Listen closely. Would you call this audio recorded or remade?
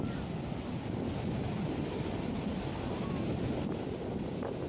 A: recorded